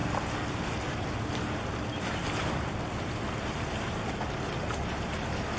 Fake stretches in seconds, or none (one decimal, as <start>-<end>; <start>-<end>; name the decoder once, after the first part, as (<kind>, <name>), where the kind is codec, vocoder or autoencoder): none